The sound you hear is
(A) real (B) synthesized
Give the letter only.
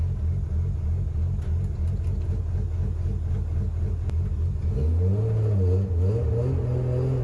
A